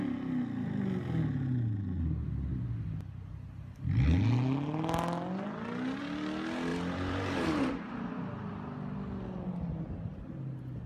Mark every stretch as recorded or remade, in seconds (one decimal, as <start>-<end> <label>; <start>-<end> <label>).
0.0-6.7 recorded; 6.7-7.7 remade; 7.7-10.9 recorded